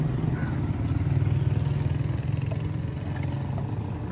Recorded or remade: recorded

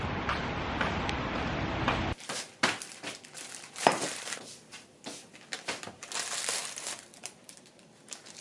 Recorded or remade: remade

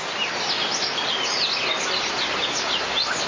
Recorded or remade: recorded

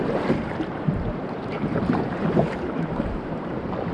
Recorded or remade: remade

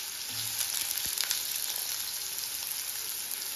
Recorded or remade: recorded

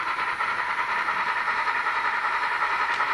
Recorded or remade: remade